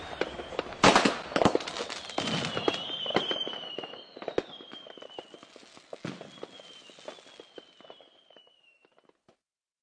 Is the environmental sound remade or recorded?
recorded